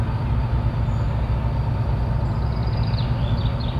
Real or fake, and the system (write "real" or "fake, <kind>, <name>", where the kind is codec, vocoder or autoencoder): real